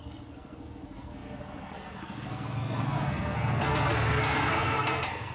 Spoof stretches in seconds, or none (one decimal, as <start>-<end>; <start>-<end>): 0.0-5.3